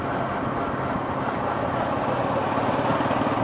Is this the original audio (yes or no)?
yes